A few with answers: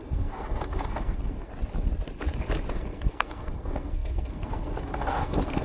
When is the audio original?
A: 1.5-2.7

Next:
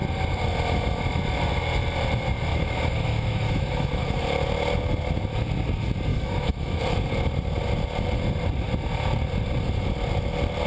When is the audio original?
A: 0.0-2.5; 4.2-6.1; 6.8-10.7

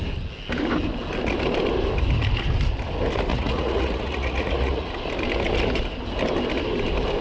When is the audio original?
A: 0.0-3.3; 4.9-7.2

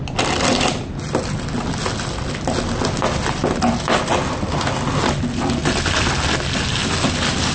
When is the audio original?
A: 0.0-7.5

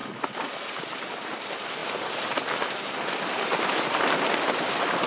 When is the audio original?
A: 0.0-5.1

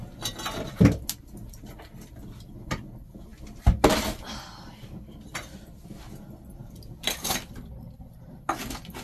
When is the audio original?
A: 0.0-9.0

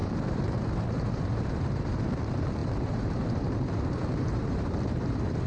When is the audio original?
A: none

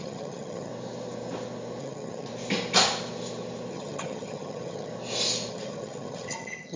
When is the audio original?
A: 0.7-1.8; 2.3-3.7; 4.9-5.5